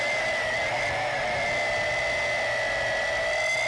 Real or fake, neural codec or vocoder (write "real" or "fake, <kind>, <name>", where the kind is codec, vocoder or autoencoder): real